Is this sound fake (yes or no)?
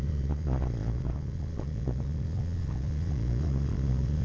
yes